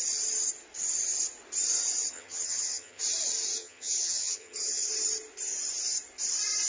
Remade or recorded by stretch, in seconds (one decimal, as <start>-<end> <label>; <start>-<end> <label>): 0.0-2.1 recorded; 2.1-3.0 remade; 3.0-3.6 recorded; 3.6-4.9 remade; 4.9-6.7 recorded

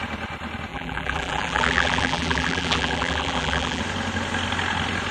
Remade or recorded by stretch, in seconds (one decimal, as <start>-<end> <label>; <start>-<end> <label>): 0.0-0.7 recorded; 0.7-3.8 remade; 3.8-5.1 recorded